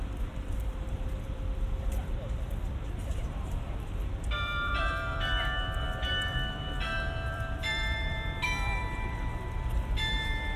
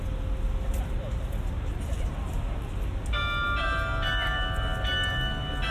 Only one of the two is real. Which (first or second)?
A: second